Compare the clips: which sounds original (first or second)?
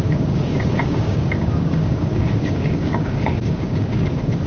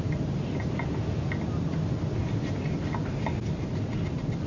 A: second